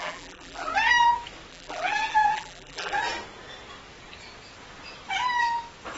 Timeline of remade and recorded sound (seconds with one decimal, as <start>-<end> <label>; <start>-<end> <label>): 0.0-0.7 remade; 0.7-1.5 recorded; 1.5-3.0 remade; 3.0-6.0 recorded